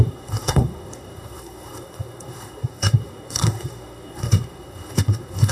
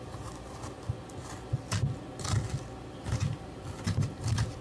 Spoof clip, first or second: first